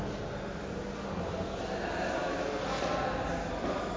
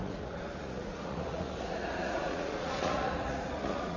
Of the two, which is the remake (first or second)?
second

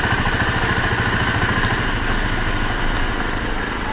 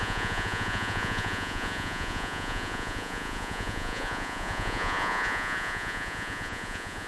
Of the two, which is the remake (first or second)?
second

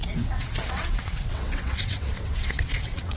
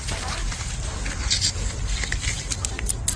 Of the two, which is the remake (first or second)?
first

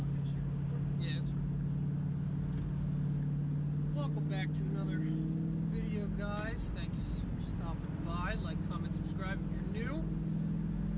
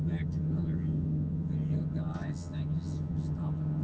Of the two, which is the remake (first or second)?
second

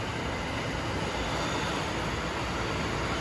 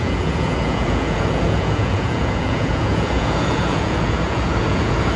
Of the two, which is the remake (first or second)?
second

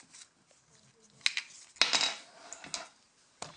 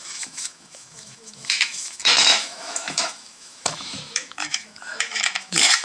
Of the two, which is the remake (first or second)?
second